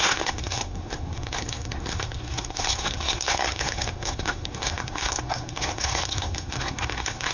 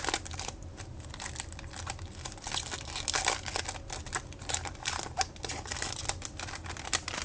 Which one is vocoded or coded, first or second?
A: first